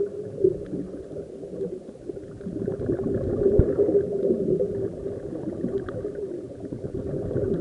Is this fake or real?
real